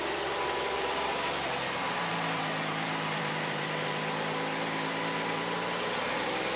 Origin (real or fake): fake